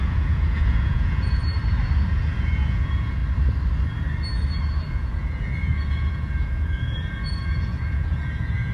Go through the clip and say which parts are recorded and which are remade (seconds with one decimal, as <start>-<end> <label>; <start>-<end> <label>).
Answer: 0.0-1.4 remade; 1.4-2.1 recorded; 2.1-3.2 remade; 3.2-4.9 recorded; 4.9-8.7 remade